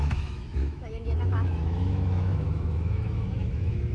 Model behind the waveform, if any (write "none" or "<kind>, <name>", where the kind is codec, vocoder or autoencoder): autoencoder, DAC-VAE